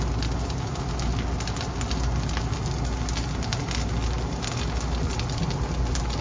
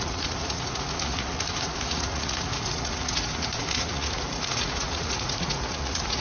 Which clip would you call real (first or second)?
first